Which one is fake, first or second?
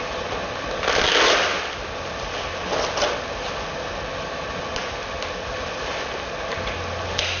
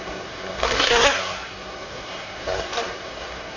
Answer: second